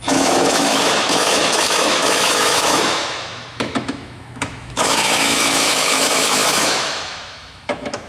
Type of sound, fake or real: fake